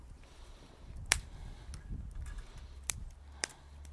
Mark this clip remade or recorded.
recorded